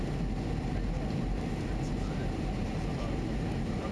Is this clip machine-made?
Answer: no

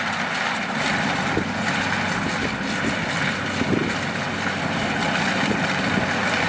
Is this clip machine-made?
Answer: no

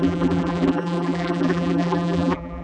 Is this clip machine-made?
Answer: yes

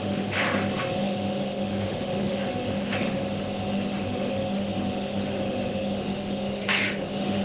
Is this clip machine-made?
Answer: yes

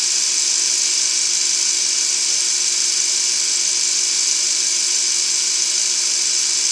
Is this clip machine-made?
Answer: no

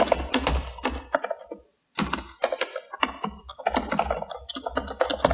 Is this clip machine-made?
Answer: no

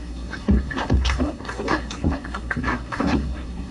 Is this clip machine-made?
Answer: yes